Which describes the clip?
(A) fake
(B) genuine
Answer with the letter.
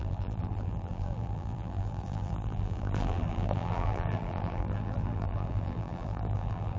A